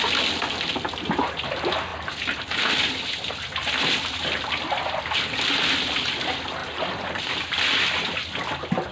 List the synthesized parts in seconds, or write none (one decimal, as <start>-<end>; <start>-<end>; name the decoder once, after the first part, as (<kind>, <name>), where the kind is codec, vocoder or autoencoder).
none